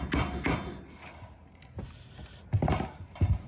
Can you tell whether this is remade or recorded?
recorded